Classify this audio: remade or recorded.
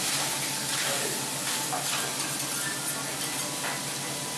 recorded